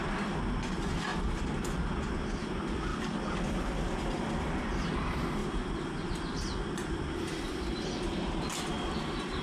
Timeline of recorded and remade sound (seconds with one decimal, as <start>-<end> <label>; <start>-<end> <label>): 0.0-2.9 recorded; 2.9-4.2 remade; 4.2-5.4 recorded; 5.4-7.4 remade; 7.4-9.4 recorded